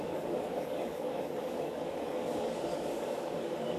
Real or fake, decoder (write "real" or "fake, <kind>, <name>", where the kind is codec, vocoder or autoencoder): fake, codec, DAC